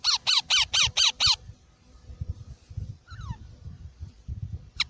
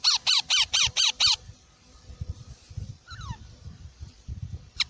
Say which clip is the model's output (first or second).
second